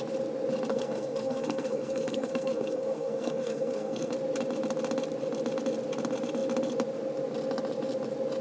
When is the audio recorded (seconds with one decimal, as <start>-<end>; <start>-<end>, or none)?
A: 0.0-0.7; 4.1-8.4